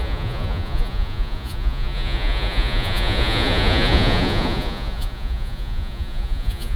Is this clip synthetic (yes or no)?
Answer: yes